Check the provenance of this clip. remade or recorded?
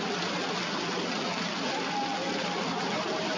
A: recorded